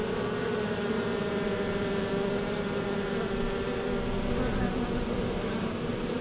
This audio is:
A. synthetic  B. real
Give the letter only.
B